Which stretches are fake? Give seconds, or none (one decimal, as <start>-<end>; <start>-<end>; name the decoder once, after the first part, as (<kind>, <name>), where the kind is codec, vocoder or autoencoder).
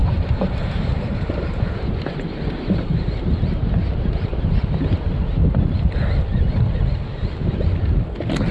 0.0-4.3 (vocoder, BigVGAN v2)